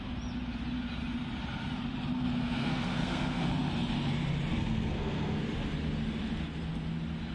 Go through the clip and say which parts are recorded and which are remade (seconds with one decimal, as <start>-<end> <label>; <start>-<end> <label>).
0.0-2.4 recorded; 2.4-3.5 remade; 3.5-4.5 recorded; 4.5-5.4 remade; 5.4-7.3 recorded